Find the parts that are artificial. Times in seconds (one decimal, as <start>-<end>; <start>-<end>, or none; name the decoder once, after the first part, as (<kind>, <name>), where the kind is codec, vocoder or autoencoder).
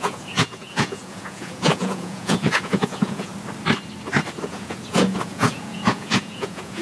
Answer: 0.0-3.3 (vocoder, Vocos); 4.4-6.8